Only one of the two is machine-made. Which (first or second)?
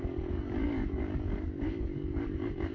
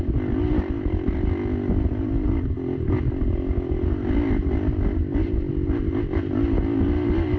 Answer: first